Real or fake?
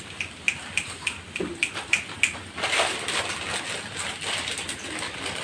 real